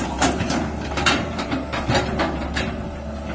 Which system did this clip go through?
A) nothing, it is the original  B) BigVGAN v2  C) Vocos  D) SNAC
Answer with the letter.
B